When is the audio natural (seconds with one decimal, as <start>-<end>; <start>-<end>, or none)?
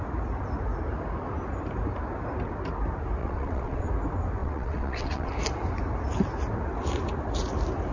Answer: 0.0-3.2; 3.9-4.4; 5.3-7.9